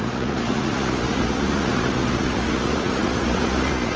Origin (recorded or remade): remade